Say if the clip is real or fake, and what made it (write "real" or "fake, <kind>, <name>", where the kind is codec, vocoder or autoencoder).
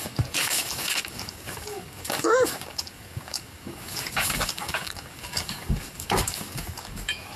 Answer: fake, codec, DAC